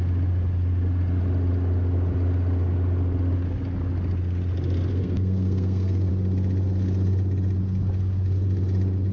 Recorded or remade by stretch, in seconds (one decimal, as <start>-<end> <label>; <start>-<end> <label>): 0.0-4.9 recorded; 4.9-6.1 remade; 6.1-9.1 recorded

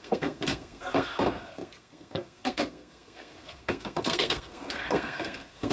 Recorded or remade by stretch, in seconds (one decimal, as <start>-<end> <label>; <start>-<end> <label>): 0.0-5.7 remade

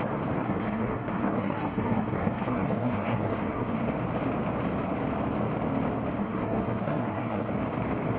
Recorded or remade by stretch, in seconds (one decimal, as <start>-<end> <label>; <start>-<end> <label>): 0.0-0.4 recorded; 0.4-3.8 remade; 3.8-6.2 recorded; 6.2-7.5 remade; 7.5-8.2 recorded

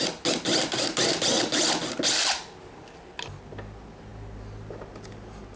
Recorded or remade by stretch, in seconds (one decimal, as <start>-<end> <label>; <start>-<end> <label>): 0.0-5.6 recorded

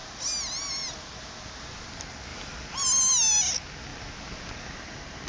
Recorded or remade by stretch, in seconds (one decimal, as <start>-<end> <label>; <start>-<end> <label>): 0.0-5.3 recorded

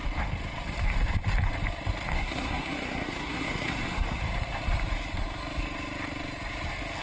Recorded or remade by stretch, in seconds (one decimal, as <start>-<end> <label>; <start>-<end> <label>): 0.0-2.1 recorded; 2.1-4.2 remade; 4.2-7.0 recorded

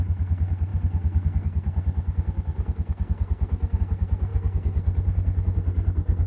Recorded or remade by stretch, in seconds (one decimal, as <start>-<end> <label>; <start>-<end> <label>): 0.0-6.3 remade

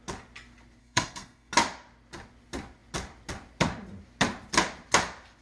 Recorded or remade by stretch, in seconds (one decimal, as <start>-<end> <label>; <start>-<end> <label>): 0.0-0.8 recorded; 0.8-1.5 remade; 1.5-5.4 recorded